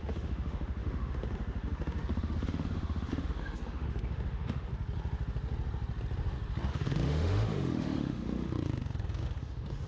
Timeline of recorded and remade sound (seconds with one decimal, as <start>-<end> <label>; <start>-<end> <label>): 0.0-4.7 remade; 4.7-6.7 recorded; 6.7-9.9 remade